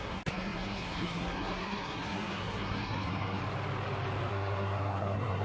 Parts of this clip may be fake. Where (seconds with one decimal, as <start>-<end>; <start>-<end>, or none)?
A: 0.0-3.4; 4.3-5.4